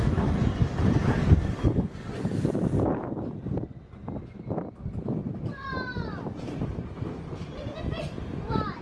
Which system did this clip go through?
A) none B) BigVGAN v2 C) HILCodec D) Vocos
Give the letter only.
A